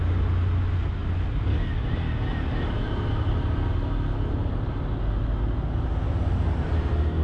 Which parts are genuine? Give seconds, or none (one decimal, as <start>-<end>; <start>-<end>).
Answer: 0.0-7.2